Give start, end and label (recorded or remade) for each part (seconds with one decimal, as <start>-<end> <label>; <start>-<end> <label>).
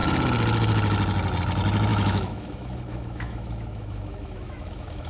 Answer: 0.0-1.9 recorded; 1.9-5.1 remade